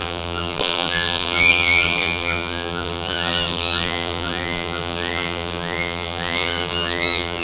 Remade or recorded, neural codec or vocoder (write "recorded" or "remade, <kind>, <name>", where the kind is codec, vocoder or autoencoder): remade, vocoder, BigVGAN v2